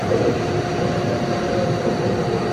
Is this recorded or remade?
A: recorded